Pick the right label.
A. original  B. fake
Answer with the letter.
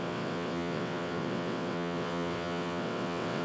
B